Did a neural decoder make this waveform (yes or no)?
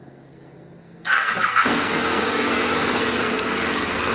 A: yes